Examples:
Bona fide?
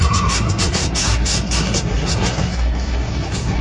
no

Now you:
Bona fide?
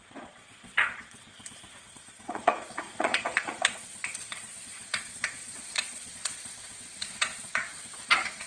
no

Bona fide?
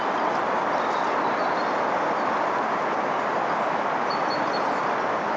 yes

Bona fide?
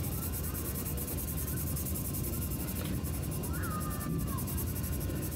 yes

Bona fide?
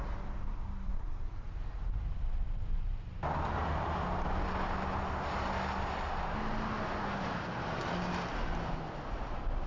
yes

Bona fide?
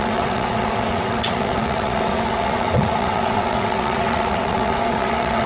no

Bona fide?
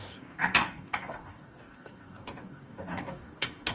no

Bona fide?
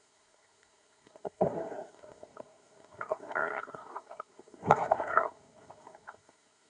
no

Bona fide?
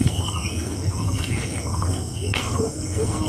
no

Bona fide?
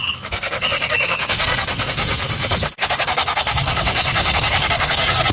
no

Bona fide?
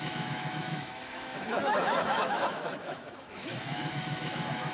no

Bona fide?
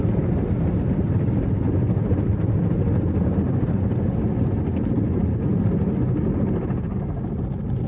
yes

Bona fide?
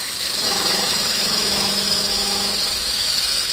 no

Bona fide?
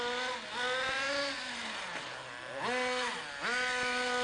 yes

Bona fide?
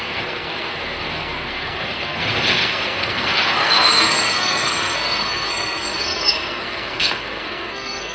no